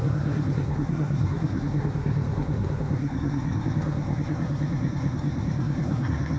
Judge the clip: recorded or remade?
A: remade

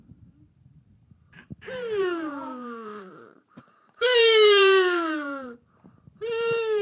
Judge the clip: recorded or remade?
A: remade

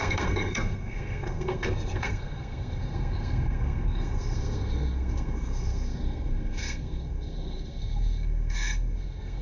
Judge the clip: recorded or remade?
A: remade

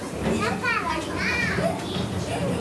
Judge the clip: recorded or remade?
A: recorded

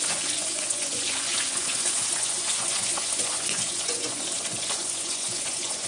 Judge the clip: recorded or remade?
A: remade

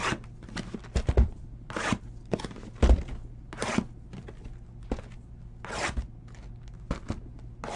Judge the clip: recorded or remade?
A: recorded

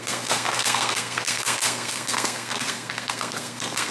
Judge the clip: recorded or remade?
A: remade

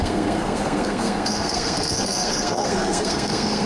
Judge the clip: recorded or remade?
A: remade